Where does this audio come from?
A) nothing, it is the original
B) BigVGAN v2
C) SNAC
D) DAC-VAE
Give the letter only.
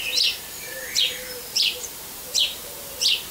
B